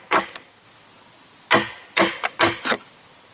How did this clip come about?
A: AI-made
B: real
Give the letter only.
B